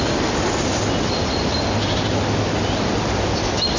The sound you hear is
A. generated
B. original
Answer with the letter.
B